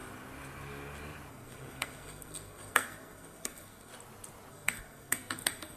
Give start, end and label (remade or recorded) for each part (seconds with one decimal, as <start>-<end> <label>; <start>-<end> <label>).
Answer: 0.0-1.3 recorded; 1.3-3.9 remade; 3.9-4.5 recorded; 4.5-5.8 remade